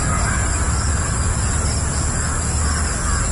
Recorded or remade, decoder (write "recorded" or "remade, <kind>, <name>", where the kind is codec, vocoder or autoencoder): recorded